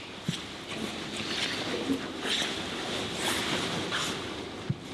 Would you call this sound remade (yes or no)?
no